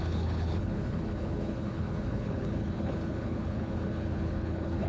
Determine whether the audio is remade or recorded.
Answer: remade